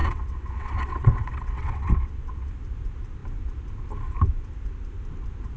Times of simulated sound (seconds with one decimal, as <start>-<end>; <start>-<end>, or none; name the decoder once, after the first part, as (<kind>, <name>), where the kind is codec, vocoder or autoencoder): 0.0-2.5 (vocoder, WaveNeXt)